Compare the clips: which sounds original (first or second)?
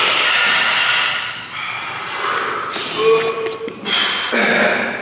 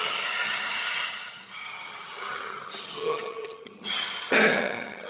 first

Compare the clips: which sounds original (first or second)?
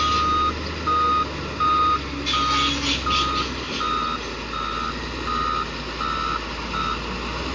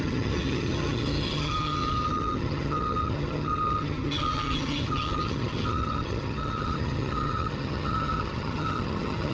first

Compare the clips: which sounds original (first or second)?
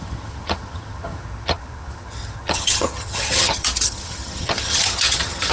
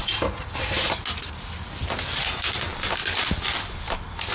second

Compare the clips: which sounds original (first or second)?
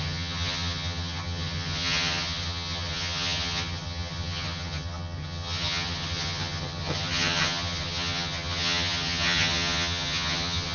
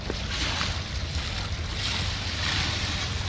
second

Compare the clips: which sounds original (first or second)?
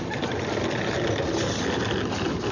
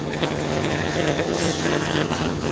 first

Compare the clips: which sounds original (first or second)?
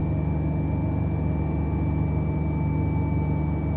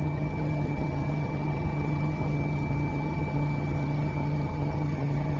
first